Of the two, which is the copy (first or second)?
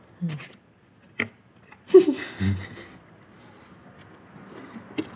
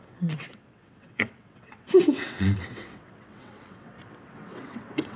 second